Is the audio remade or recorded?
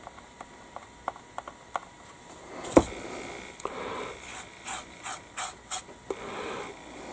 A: recorded